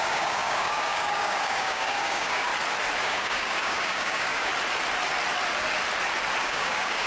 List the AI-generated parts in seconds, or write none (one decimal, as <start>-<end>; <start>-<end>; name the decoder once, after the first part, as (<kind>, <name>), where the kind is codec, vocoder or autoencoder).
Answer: 0.0-2.5 (codec, DAC); 3.0-4.5; 6.4-7.1